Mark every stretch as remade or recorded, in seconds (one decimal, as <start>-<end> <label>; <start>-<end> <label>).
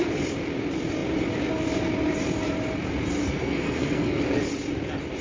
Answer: 0.0-3.2 recorded; 3.2-4.2 remade; 4.2-5.2 recorded